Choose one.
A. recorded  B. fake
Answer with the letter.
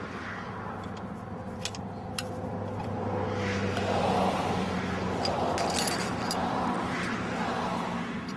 A